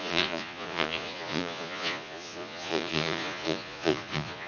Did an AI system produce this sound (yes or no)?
yes